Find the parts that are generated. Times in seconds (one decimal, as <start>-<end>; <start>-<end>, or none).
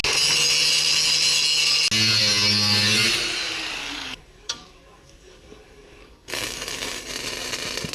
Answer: 3.8-7.1